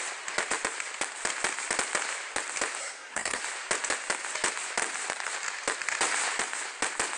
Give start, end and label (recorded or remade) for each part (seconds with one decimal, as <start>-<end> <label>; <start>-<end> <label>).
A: 0.0-2.8 recorded; 2.8-3.4 remade; 3.4-7.2 recorded